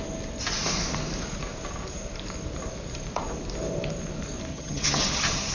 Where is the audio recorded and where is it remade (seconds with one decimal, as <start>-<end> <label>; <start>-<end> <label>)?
0.0-4.5 recorded; 4.5-5.5 remade